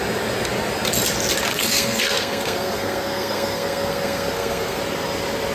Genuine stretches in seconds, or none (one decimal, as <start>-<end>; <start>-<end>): 0.0-1.5; 4.8-5.5